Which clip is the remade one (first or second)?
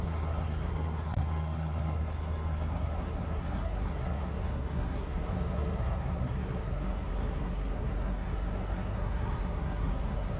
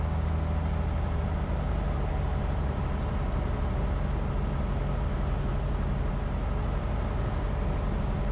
first